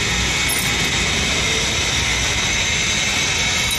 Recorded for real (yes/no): yes